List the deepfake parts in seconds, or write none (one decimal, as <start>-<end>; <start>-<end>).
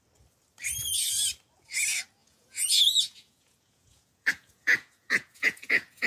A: 2.2-6.1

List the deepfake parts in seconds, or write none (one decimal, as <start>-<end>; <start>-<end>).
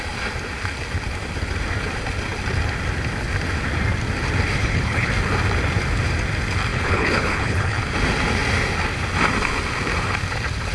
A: 4.6-5.1; 6.7-7.8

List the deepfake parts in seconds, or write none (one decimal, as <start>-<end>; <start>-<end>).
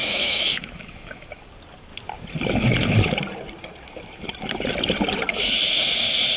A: 0.0-1.5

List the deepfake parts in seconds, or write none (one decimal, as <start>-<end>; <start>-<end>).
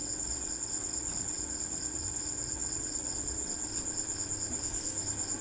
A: 0.0-3.7